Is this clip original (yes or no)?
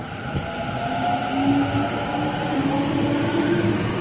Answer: yes